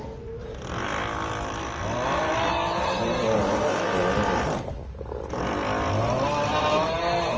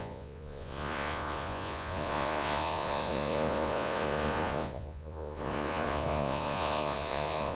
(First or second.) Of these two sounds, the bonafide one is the first